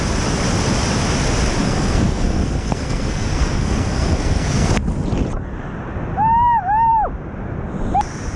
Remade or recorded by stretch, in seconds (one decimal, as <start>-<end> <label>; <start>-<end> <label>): 0.0-1.6 recorded; 1.6-4.7 remade; 4.7-8.4 recorded